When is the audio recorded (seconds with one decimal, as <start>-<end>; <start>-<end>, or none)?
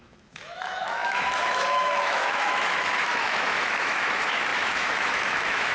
none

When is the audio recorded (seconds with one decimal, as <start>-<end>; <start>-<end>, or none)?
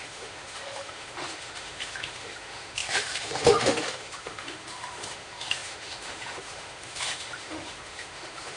none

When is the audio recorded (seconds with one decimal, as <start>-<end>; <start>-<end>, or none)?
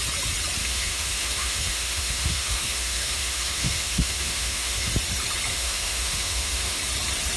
0.0-0.6; 4.9-5.5; 6.8-7.4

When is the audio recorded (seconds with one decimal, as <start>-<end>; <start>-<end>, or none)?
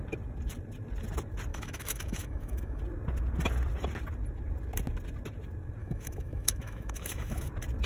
0.0-1.5; 2.8-5.8; 7.5-7.9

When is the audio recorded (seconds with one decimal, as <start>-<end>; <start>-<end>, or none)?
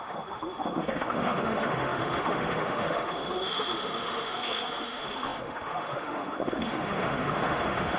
none